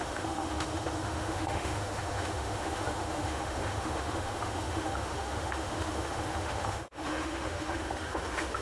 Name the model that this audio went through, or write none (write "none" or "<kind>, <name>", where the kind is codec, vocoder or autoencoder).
autoencoder, DAC-VAE